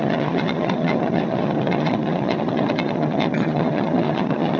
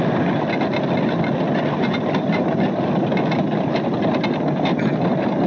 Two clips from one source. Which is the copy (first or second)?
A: first